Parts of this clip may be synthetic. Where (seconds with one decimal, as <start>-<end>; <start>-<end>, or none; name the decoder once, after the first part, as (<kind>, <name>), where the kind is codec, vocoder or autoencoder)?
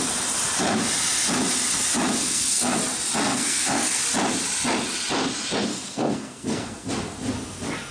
2.2-2.8 (codec, SNAC); 3.3-4.0; 5.7-6.9